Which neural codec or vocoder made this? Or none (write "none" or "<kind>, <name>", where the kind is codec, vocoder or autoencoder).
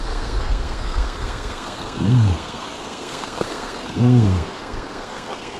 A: codec, SNAC